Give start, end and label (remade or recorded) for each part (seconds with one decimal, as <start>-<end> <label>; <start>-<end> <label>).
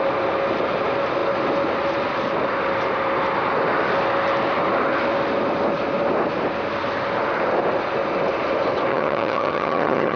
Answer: 0.0-8.9 recorded; 8.9-10.2 remade